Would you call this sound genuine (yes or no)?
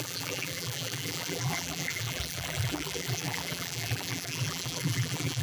no